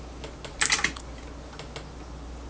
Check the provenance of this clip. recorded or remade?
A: recorded